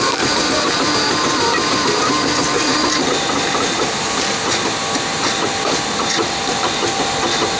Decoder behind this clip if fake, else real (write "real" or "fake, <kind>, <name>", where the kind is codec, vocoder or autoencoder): fake, vocoder, BigVGAN v2